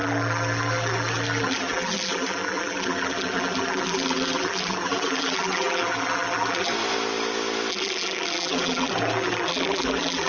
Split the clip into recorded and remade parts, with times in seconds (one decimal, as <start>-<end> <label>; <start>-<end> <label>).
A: 0.0-6.7 remade; 6.7-7.7 recorded; 7.7-10.3 remade